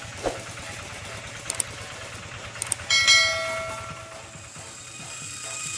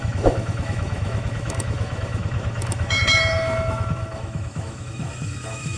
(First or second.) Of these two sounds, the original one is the first